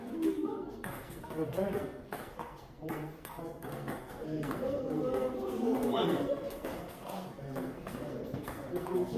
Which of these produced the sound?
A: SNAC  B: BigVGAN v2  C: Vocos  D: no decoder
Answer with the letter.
A